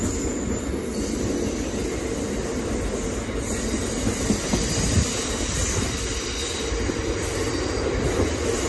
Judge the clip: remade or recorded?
recorded